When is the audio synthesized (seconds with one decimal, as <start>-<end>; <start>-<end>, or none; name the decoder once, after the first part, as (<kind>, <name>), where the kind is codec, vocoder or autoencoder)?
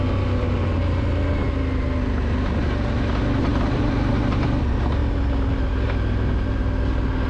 3.5-4.2 (vocoder, BigVGAN v2)